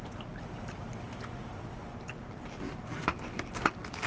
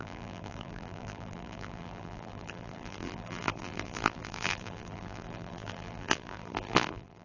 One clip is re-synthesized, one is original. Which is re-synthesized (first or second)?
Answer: second